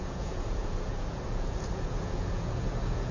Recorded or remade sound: remade